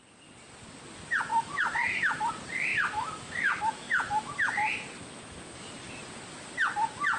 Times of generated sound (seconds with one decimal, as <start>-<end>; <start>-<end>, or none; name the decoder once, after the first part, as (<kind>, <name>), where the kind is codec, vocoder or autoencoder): 1.3-2.3 (autoencoder, DAC-VAE); 2.7-4.3; 5.0-5.7